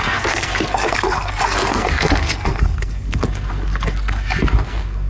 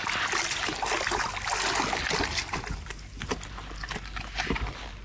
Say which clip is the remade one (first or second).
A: first